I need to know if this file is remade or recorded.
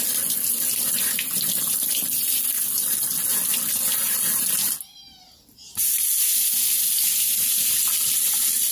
recorded